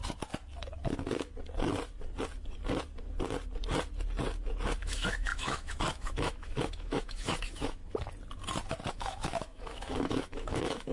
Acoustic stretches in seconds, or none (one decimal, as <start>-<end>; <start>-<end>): 0.0-4.8; 7.8-8.9